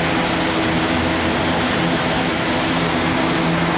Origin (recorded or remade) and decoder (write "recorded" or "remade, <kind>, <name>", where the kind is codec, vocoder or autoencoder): recorded